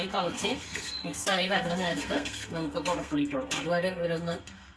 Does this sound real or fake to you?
fake